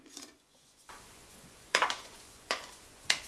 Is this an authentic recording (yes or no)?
no